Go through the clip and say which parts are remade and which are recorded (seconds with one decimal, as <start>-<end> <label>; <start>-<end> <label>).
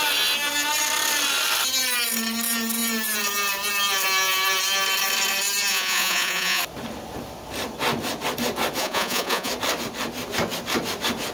0.0-5.7 recorded; 5.7-6.6 remade; 6.6-8.8 recorded; 8.8-9.5 remade; 9.5-11.3 recorded